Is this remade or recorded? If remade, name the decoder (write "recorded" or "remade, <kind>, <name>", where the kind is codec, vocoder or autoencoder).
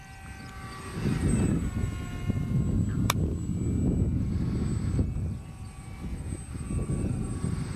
recorded